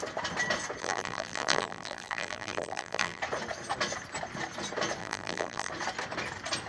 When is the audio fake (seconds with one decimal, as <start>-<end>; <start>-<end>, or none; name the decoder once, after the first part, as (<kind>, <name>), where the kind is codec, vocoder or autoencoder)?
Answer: 0.8-3.2 (vocoder, BigVGAN v2); 5.0-5.7